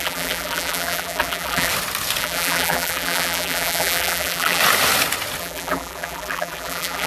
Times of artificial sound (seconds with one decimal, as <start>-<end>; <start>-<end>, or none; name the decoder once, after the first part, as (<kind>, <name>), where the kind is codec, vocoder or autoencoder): 0.0-1.7 (vocoder, BigVGAN v2); 2.2-4.6; 5.4-7.1